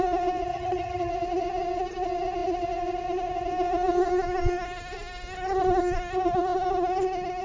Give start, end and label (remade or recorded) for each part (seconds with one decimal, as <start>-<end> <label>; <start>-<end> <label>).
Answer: 0.0-0.5 recorded; 0.5-1.1 remade; 1.1-7.4 recorded